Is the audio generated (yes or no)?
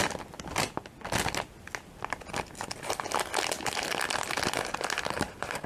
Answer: no